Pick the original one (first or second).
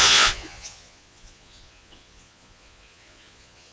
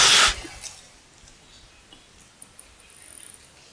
second